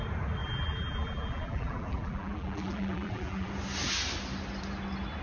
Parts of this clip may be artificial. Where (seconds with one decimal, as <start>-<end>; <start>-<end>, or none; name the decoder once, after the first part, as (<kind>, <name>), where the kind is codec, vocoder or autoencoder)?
0.4-3.5 (vocoder, BigVGAN v2)